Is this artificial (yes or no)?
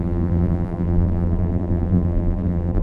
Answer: yes